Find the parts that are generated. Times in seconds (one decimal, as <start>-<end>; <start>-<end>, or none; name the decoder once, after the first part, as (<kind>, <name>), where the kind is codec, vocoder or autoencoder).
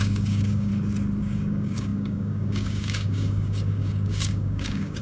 0.0-0.7 (codec, DAC); 1.2-5.0